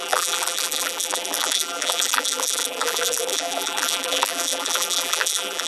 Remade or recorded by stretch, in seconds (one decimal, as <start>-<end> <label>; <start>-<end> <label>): 0.0-5.7 remade